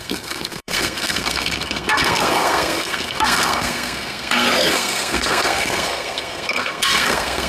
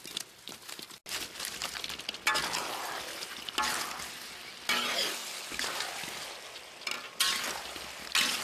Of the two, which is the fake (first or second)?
first